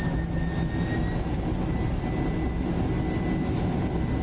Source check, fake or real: real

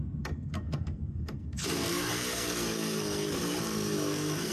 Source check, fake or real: fake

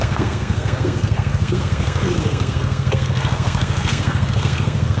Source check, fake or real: fake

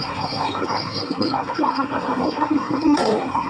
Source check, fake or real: fake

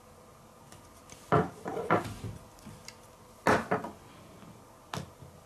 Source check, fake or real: real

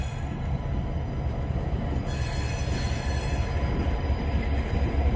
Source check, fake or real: real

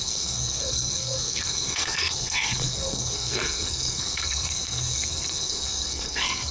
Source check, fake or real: fake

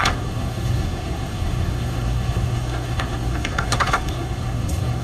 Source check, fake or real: fake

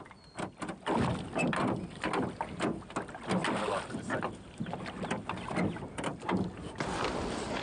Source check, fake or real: real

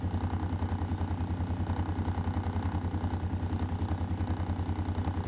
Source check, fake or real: real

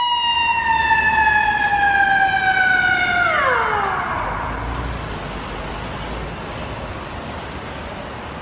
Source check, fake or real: real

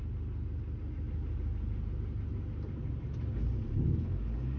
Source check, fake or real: real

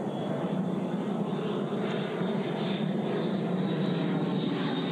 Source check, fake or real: real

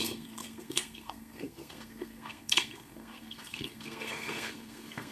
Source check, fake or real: fake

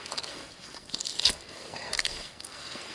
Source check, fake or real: fake